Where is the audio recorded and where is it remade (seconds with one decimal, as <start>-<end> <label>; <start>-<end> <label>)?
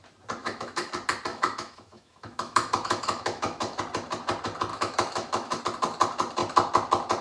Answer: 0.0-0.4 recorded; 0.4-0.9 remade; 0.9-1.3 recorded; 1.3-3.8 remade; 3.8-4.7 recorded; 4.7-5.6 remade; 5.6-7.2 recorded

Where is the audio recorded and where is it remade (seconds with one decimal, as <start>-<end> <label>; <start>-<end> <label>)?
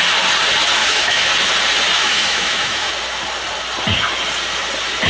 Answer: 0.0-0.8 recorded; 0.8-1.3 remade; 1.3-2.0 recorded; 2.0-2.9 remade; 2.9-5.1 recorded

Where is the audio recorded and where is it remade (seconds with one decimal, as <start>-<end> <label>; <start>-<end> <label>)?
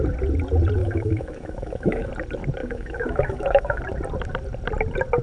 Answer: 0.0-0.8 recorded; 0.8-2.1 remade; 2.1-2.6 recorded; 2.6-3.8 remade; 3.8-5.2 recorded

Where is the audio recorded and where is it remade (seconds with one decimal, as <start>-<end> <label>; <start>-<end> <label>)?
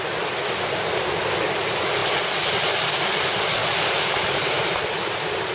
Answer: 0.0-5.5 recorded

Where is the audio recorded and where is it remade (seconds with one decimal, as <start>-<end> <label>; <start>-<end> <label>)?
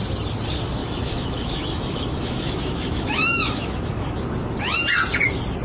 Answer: 0.0-0.8 recorded; 0.8-4.2 remade; 4.2-5.6 recorded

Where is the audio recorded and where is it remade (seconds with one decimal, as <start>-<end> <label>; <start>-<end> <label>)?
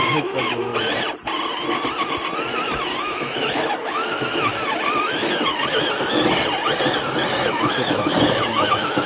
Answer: 0.0-0.7 remade; 0.7-3.0 recorded; 3.0-4.5 remade; 4.5-5.0 recorded; 5.0-5.6 remade; 5.6-7.3 recorded; 7.3-9.1 remade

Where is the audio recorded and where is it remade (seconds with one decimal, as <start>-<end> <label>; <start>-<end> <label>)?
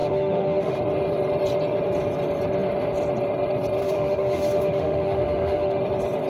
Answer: 0.0-0.8 remade; 0.8-3.8 recorded; 3.8-5.8 remade; 5.8-6.3 recorded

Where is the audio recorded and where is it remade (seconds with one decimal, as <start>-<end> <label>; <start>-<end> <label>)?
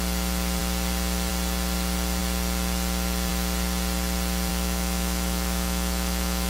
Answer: 0.0-4.5 recorded; 4.5-6.5 remade